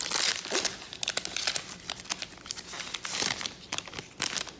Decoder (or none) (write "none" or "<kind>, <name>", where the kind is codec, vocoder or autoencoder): none